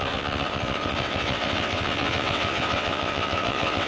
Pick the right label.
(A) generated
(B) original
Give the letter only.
A